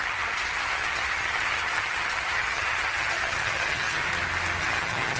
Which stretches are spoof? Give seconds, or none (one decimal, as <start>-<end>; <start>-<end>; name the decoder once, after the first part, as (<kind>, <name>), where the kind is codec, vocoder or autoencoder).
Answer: 0.0-4.0 (vocoder, HiFi-GAN); 4.6-5.2